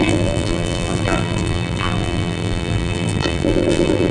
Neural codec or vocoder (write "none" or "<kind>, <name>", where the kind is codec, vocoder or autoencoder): vocoder, BigVGAN v2